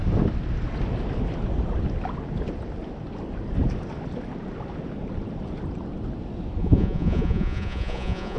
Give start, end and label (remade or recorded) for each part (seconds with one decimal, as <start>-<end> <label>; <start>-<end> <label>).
0.0-6.6 recorded; 6.6-8.4 remade